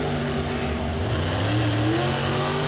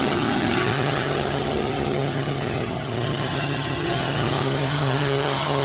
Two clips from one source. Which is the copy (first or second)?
second